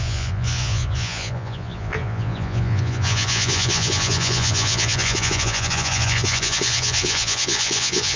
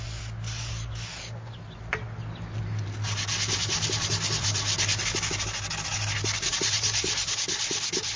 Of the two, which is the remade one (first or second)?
first